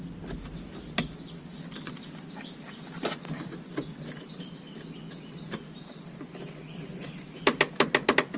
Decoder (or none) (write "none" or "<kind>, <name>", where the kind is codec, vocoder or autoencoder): none